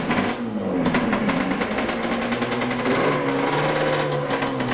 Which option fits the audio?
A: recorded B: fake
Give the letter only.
A